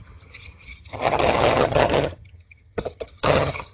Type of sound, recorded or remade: remade